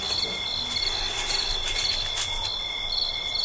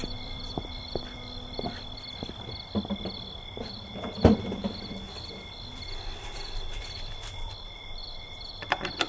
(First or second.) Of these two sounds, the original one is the first